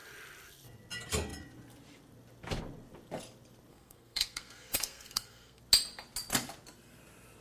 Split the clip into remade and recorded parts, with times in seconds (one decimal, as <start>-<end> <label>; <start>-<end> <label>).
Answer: 0.0-3.7 recorded; 3.7-5.6 remade; 5.6-7.4 recorded